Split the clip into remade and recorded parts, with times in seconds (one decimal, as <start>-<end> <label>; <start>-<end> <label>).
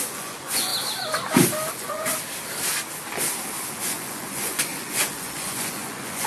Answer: 0.0-0.7 remade; 0.7-1.7 recorded; 1.7-2.1 remade; 2.1-3.8 recorded; 3.8-6.3 remade